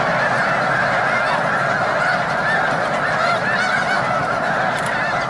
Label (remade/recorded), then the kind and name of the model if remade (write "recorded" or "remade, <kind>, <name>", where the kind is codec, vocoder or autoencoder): recorded